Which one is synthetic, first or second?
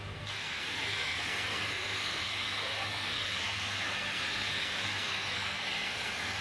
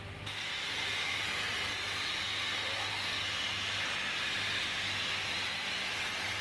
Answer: first